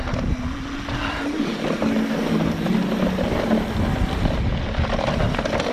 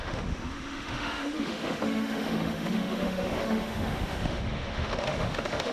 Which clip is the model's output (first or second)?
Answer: second